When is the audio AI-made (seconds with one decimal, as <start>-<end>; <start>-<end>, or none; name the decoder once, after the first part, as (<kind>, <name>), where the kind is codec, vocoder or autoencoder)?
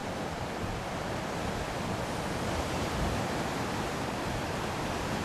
none